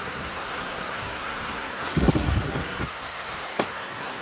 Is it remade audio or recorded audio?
remade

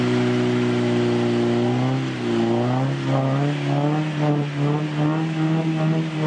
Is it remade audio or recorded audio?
recorded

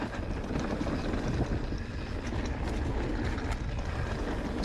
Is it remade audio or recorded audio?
recorded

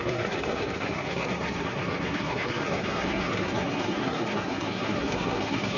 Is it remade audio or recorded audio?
remade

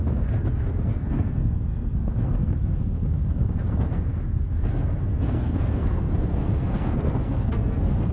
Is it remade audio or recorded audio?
remade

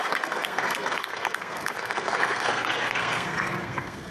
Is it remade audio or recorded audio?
remade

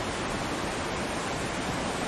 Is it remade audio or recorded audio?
recorded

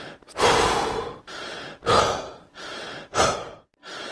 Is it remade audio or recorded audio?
recorded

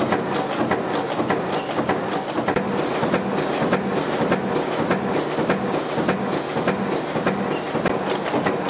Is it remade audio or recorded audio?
recorded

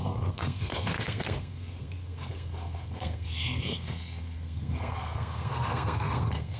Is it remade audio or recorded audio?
remade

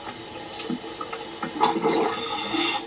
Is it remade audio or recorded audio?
recorded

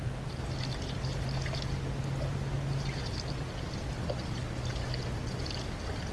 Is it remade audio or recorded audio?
recorded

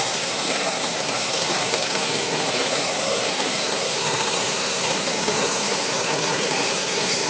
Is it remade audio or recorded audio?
remade